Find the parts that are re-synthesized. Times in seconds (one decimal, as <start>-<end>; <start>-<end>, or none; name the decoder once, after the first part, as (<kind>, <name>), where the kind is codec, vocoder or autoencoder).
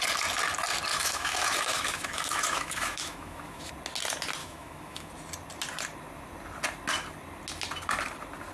0.9-3.7 (autoencoder, DAC-VAE); 4.4-5.1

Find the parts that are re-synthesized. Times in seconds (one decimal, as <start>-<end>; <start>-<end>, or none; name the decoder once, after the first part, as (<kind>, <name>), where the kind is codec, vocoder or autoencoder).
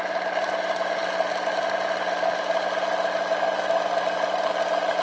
none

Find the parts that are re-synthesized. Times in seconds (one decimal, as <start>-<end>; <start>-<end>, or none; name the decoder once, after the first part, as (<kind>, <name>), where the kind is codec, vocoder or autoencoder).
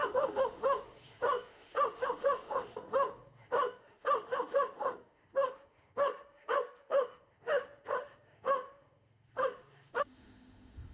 0.0-10.9 (autoencoder, DAC-VAE)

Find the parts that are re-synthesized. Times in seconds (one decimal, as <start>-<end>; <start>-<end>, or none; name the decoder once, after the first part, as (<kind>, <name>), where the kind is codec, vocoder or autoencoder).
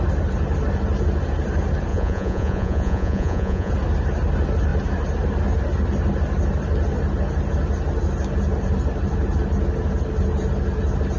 1.9-3.7 (vocoder, Vocos)